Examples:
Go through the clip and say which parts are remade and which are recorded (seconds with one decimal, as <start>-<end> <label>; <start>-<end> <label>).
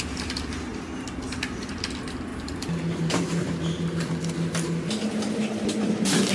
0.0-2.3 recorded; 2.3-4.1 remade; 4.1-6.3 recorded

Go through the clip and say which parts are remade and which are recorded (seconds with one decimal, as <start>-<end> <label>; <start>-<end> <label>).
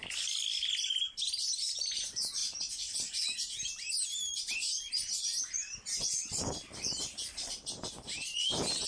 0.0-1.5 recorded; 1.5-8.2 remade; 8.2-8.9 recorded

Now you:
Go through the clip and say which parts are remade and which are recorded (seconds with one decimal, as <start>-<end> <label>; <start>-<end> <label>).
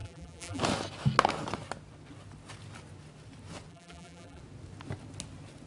0.0-0.6 remade; 0.6-3.7 recorded; 3.7-4.4 remade; 4.4-5.7 recorded